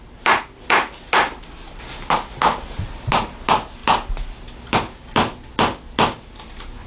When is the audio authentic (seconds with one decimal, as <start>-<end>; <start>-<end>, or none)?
0.0-6.9